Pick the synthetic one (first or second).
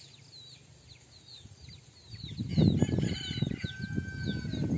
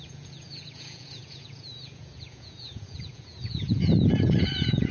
second